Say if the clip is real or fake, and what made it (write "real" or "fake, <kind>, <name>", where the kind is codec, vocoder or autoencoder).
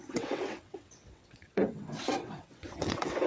fake, vocoder, WaveNeXt